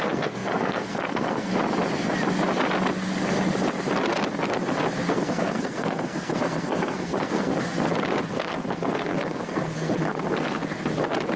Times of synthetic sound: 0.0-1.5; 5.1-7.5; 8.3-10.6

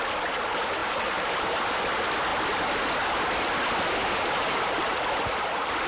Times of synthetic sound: 0.8-1.7; 4.0-5.0

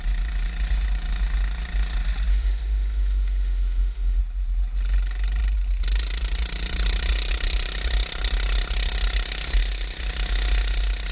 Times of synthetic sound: 2.3-4.2

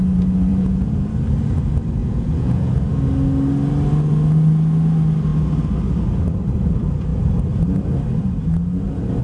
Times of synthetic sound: 0.5-1.1; 2.0-2.7

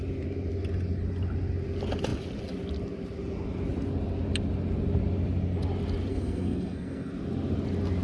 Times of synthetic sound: 6.1-7.1

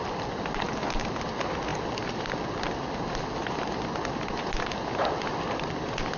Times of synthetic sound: none

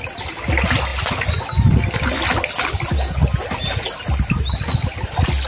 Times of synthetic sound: none

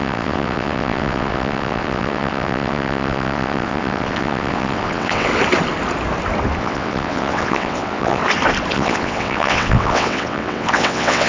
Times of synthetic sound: 0.0-5.3; 6.6-8.2; 8.7-11.3